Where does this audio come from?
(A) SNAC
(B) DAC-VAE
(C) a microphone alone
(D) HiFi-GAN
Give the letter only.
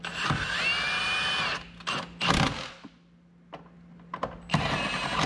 C